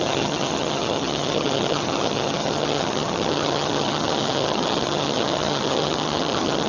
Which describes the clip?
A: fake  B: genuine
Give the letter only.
A